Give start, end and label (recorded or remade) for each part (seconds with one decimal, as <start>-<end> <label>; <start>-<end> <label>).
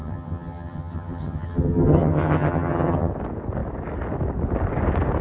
0.0-3.1 remade; 3.1-5.2 recorded